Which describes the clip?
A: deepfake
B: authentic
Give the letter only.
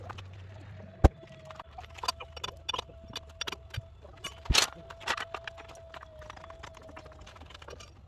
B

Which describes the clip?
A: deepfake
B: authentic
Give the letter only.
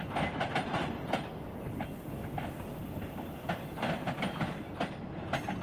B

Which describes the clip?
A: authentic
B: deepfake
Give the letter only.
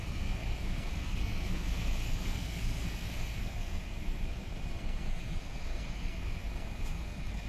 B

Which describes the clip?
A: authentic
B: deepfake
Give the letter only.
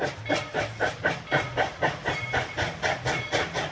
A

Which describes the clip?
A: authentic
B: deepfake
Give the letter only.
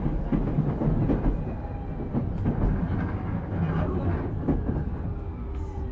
A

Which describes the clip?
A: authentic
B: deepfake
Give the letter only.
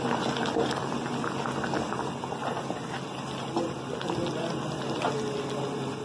A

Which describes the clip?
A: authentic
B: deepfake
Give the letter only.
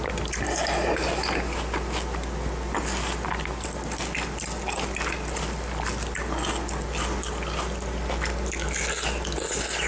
A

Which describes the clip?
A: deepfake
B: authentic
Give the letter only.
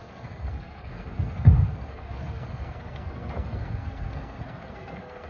A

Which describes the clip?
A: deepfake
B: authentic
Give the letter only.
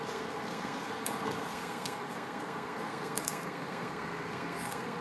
A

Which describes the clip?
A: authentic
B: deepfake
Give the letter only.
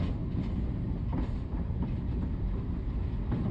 A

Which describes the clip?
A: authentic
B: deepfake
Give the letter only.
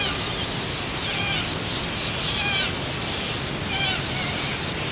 A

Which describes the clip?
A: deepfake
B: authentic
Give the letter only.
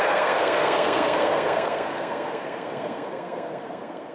A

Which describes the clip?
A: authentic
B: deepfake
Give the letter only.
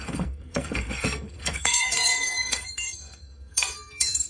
B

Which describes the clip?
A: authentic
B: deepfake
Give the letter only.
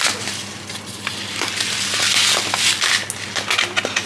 A